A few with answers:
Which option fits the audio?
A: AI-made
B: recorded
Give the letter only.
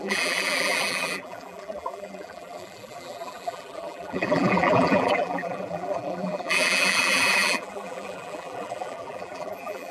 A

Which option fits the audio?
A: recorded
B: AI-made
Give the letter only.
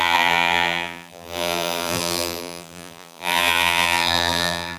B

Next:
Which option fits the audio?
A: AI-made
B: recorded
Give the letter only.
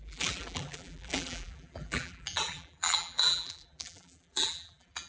A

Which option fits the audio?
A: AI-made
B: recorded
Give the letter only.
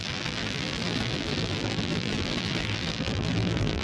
A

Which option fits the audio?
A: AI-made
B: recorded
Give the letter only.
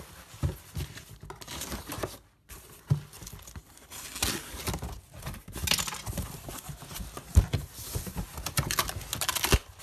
B